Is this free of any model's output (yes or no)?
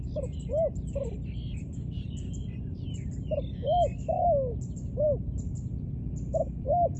yes